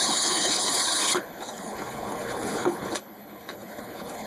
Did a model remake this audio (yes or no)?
yes